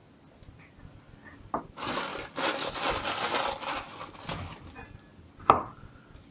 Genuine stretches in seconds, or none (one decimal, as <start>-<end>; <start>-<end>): 0.0-6.3